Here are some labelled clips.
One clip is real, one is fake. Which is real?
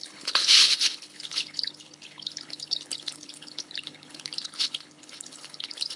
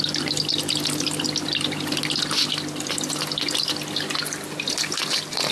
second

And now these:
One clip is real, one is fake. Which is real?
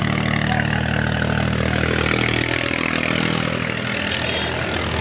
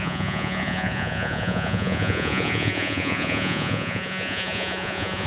first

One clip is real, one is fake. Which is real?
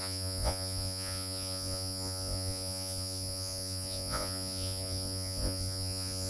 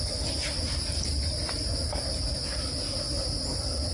second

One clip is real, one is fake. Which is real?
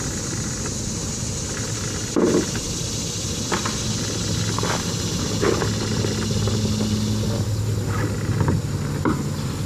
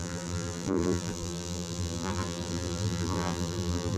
first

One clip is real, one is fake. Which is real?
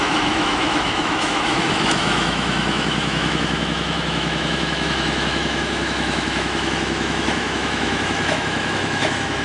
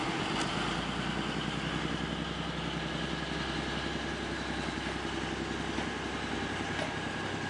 second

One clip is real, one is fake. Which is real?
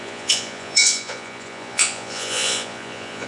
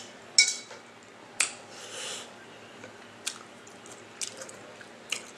second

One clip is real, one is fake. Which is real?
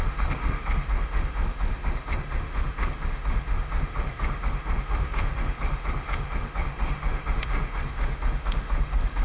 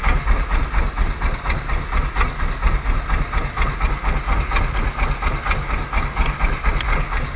second